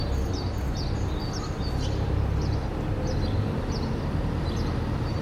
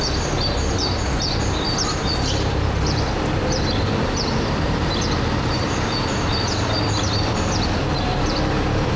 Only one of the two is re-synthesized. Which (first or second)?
second